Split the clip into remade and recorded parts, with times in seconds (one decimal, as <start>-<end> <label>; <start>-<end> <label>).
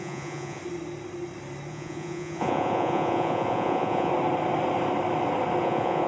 0.0-0.6 remade; 0.6-1.7 recorded; 1.7-4.1 remade; 4.1-5.6 recorded; 5.6-6.1 remade